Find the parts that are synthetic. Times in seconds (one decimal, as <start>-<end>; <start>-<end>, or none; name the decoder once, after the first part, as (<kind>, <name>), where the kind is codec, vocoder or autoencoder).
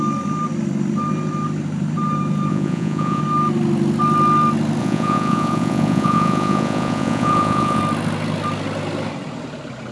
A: 2.5-3.2 (vocoder, Vocos); 4.8-7.8